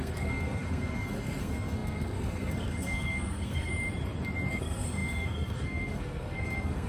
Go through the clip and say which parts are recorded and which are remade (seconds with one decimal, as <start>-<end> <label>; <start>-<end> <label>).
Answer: 0.0-3.7 remade; 3.7-4.5 recorded; 4.5-6.9 remade